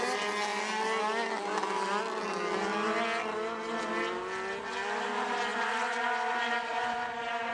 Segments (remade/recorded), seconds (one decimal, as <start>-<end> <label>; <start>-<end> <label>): 0.0-7.5 recorded